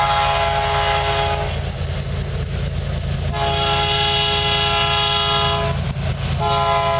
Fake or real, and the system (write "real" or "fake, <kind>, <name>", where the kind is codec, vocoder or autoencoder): real